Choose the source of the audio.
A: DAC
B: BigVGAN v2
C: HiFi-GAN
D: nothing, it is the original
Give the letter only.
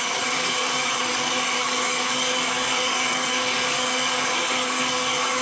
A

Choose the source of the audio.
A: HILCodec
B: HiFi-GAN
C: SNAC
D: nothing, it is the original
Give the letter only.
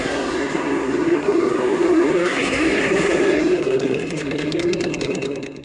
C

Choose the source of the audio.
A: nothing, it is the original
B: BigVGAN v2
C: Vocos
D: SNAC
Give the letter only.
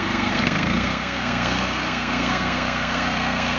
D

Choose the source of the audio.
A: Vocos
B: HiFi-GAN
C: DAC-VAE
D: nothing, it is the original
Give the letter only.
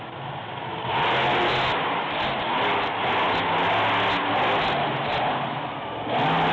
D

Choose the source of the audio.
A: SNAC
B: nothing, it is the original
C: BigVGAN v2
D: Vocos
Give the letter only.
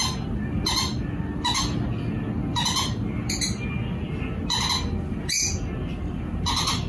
B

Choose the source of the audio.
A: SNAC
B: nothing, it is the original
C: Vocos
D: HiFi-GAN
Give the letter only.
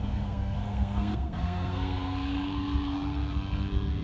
A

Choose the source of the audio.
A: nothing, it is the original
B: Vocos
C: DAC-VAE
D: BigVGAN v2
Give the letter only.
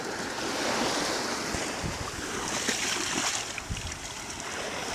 A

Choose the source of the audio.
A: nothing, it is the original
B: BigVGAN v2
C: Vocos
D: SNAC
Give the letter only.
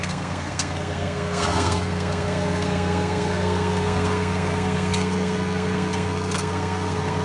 D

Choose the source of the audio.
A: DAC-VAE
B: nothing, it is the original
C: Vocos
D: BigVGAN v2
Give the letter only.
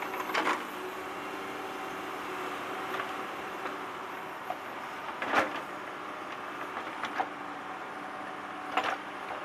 B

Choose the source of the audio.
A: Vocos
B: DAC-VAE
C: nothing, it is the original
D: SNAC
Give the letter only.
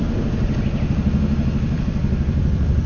C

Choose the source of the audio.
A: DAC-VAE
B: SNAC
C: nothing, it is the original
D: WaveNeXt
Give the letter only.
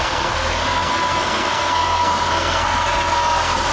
B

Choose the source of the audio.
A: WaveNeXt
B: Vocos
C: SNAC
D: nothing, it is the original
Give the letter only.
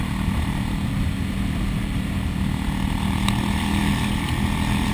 D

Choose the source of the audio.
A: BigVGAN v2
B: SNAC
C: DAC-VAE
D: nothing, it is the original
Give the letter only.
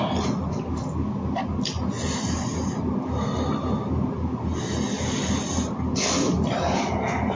D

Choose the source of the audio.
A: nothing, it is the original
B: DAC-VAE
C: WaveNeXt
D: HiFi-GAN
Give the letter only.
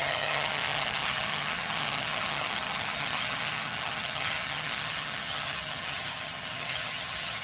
D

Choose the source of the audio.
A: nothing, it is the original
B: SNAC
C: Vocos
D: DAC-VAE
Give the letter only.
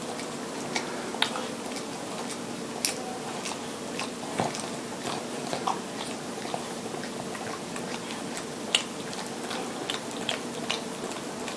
A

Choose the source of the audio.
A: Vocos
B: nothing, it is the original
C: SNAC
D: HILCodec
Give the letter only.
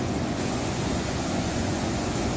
A